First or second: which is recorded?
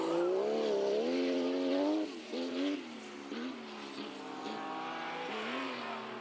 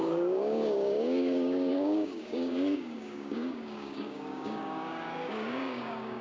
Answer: first